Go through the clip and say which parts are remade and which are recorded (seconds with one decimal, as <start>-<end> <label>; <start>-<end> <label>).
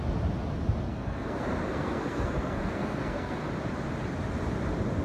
0.0-0.9 recorded; 0.9-3.4 remade; 3.4-5.0 recorded